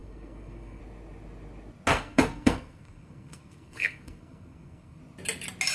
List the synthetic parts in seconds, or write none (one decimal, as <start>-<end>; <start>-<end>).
0.0-0.8; 1.9-5.0